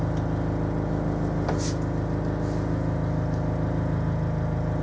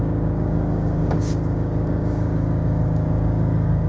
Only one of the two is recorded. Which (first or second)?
first